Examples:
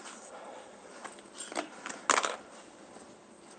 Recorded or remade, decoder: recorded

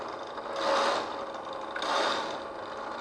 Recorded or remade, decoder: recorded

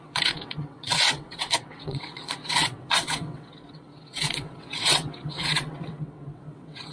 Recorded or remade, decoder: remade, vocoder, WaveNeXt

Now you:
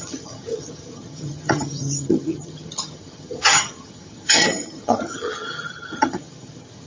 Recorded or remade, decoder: remade, vocoder, HiFi-GAN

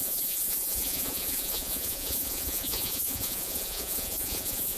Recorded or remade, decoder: remade, vocoder, Vocos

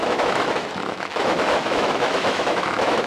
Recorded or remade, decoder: remade, autoencoder, DAC-VAE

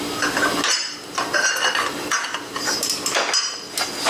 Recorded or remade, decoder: recorded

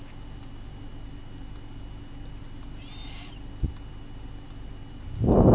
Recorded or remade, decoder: recorded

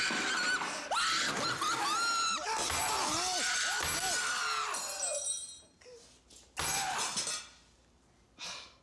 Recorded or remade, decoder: recorded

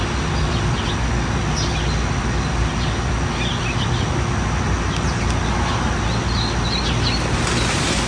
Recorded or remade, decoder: recorded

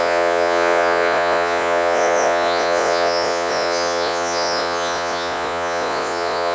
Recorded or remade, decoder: remade, vocoder, Vocos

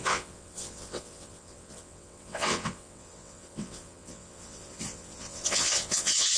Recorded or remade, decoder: remade, vocoder, WaveNeXt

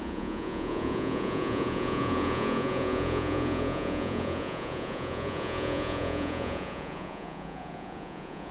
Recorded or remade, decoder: remade, vocoder, Vocos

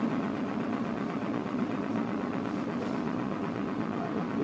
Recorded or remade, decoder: remade, vocoder, Vocos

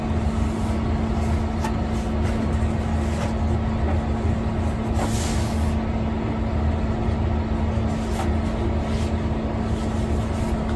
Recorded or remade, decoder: recorded